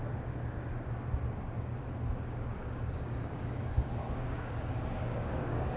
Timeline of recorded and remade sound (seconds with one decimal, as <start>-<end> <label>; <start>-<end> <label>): 0.0-2.6 recorded; 2.6-5.8 remade